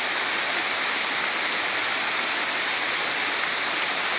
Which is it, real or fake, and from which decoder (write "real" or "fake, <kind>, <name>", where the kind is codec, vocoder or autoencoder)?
real